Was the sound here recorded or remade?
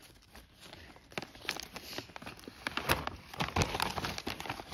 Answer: recorded